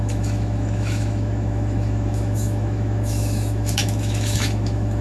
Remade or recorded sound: remade